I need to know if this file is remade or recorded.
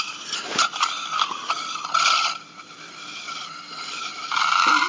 recorded